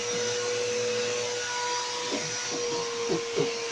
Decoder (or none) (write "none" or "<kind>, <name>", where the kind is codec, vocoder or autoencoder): none